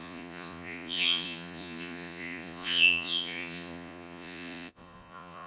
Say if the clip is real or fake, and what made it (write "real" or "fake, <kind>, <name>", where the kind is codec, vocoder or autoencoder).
fake, vocoder, Vocos